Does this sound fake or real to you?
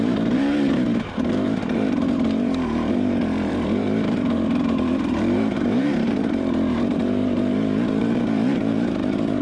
fake